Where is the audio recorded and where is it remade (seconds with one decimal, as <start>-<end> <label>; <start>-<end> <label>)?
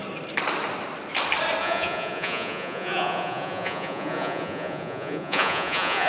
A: 0.0-1.6 recorded; 1.6-6.1 remade